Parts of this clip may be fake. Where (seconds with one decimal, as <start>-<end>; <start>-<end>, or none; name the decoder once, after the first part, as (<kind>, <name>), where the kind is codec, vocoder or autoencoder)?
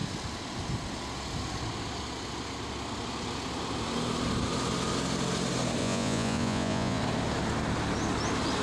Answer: 5.8-7.0 (vocoder, Vocos)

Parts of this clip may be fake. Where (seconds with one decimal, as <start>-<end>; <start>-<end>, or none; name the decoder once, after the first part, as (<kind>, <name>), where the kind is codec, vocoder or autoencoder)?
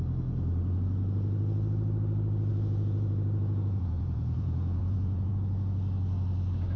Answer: 2.5-5.3 (vocoder, Vocos)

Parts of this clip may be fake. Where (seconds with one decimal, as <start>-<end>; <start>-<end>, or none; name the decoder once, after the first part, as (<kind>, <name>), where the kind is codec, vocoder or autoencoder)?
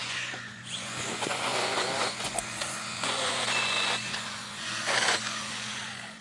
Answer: 0.0-6.2 (vocoder, Vocos)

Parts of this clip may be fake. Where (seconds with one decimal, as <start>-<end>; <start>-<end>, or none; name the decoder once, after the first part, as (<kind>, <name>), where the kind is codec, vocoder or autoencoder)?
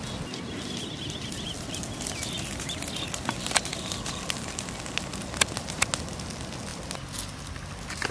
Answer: none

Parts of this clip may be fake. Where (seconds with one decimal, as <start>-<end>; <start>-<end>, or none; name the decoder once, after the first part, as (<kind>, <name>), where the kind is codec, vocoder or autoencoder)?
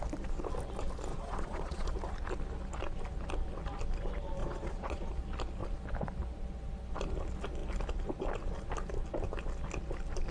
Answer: 1.1-1.9 (vocoder, Vocos); 4.4-5.1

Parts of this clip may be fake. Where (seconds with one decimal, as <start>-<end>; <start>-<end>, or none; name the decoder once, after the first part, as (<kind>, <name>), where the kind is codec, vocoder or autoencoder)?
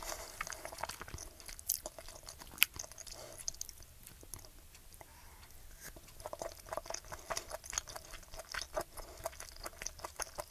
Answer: none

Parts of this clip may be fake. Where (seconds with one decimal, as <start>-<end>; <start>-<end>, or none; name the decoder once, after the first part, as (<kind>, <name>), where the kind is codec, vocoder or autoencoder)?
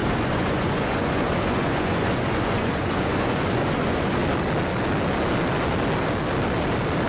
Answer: 0.0-4.2 (vocoder, Vocos)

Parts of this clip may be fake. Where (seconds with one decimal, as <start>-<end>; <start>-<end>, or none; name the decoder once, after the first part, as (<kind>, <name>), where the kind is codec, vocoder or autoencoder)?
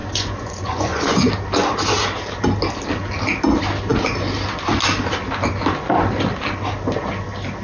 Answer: 0.0-1.3 (vocoder, Vocos)